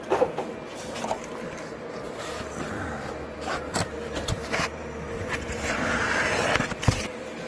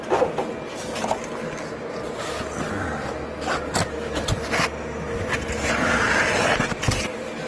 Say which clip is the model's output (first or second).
first